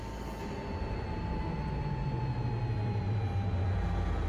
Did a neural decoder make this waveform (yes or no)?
no